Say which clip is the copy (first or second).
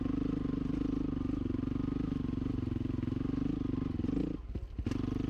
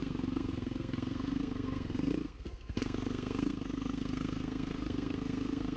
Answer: second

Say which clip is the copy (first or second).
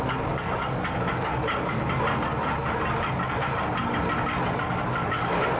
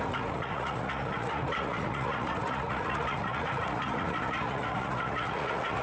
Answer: second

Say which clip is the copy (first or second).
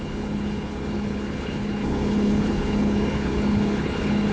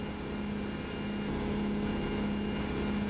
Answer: first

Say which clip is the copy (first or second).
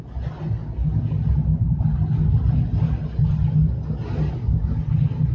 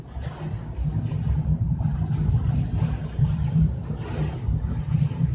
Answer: second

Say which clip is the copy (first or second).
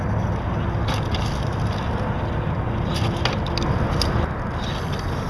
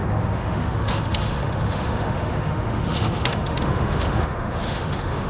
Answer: second